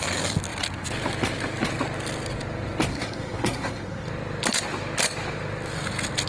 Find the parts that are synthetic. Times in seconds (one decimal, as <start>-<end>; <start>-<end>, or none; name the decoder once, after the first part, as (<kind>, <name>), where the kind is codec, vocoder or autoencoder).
2.9-4.1 (codec, SNAC)